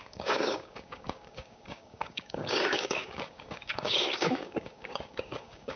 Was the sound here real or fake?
fake